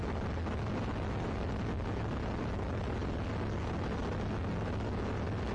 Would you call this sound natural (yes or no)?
yes